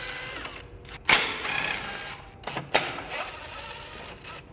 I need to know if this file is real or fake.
real